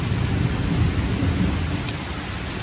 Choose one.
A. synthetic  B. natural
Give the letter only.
B